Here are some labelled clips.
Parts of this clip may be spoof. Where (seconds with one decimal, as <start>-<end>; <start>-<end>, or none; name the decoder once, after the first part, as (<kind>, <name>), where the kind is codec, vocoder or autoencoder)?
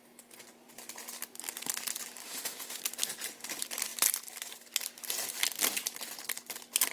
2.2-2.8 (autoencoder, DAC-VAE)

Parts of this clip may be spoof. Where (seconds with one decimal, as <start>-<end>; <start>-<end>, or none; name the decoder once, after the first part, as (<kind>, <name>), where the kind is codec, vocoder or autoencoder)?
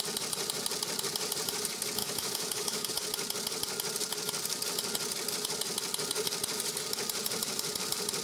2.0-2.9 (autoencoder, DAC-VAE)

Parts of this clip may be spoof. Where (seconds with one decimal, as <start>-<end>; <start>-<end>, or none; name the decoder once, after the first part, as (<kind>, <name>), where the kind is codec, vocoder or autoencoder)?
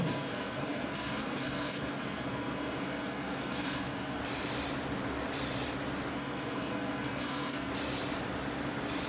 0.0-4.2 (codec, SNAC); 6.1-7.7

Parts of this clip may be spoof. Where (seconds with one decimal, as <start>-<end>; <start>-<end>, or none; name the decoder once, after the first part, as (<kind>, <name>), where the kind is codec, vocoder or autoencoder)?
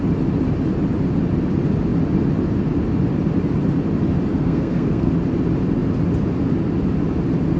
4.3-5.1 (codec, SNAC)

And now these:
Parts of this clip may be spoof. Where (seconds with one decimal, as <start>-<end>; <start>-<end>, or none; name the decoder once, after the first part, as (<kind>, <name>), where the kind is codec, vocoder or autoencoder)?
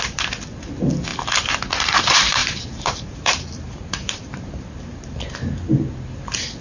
2.4-4.5 (vocoder, BigVGAN v2)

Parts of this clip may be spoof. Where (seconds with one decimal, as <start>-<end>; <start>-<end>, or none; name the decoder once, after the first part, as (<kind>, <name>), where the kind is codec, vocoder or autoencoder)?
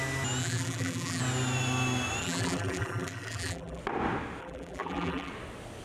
0.4-1.2 (vocoder, BigVGAN v2); 2.2-3.8; 4.4-5.3